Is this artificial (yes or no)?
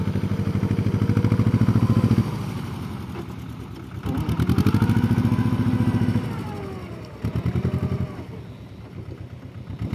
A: no